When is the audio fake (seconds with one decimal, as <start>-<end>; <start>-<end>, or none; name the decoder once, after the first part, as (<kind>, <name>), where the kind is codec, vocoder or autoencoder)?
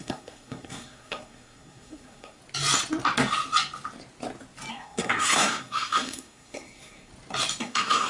0.0-2.4 (codec, SNAC); 4.7-7.1; 7.6-8.1